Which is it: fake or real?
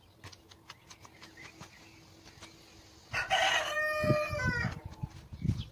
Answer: real